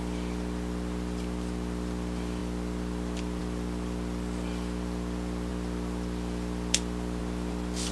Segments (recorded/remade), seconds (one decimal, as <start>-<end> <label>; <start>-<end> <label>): 0.0-7.9 recorded